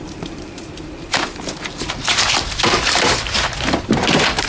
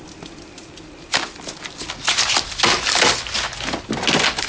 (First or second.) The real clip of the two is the second